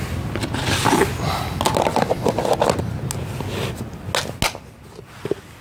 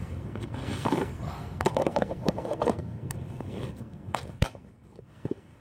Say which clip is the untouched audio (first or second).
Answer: first